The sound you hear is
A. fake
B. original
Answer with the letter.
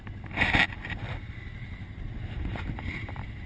B